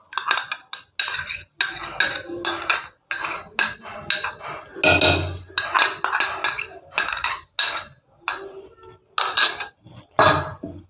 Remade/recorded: recorded